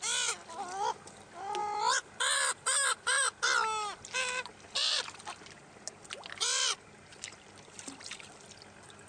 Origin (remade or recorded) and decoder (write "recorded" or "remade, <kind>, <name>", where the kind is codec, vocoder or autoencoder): recorded